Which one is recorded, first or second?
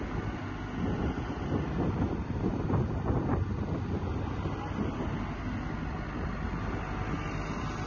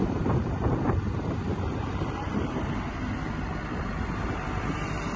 first